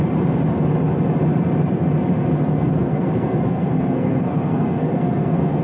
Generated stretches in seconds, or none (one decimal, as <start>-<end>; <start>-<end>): 2.5-5.6